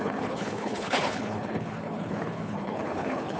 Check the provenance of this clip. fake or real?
fake